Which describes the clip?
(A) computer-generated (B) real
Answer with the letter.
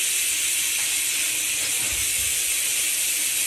B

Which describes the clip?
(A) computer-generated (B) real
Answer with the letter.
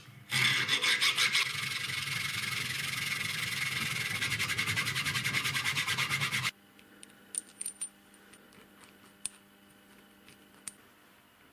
B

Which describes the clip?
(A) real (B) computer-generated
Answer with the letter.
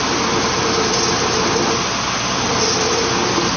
A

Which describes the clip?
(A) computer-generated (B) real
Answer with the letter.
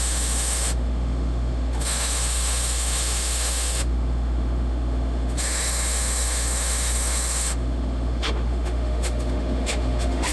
A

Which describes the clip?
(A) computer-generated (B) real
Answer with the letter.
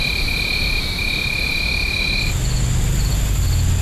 B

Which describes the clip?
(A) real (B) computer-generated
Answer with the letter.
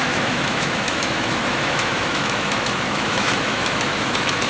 B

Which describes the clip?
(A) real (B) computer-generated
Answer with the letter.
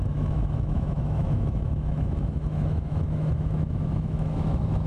B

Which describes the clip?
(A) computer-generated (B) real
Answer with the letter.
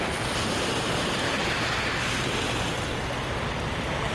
B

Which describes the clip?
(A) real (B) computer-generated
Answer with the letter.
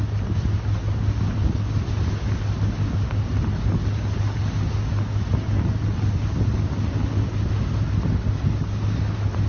A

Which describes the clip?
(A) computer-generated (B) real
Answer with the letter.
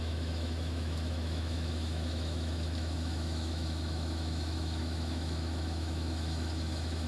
A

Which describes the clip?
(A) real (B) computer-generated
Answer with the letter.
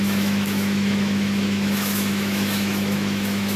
B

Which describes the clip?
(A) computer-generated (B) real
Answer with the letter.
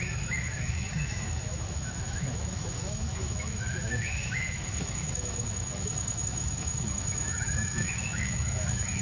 A